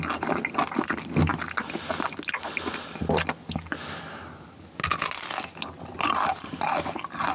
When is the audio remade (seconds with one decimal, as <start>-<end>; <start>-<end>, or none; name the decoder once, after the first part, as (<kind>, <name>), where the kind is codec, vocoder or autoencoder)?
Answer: none